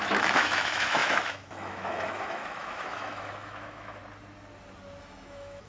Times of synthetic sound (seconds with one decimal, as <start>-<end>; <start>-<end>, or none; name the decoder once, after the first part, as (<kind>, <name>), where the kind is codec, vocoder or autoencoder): 0.0-4.0 (autoencoder, DAC-VAE); 5.0-5.7